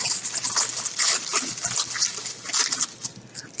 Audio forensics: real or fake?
real